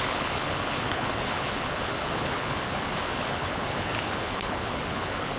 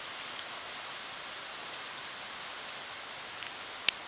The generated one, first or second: first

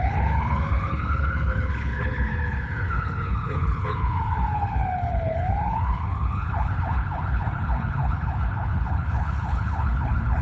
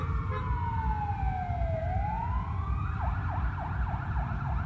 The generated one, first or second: first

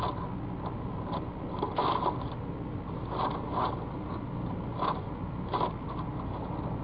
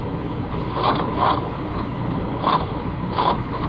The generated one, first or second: second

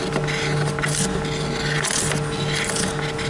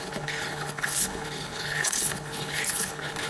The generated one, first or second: second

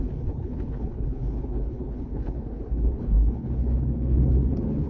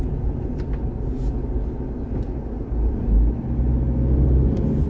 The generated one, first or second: first